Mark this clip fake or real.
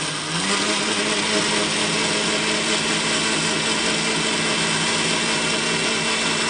real